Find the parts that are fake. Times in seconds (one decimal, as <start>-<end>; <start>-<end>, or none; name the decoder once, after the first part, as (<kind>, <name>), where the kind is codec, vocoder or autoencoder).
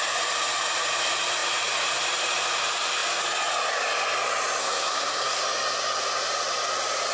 4.6-5.4 (codec, SNAC)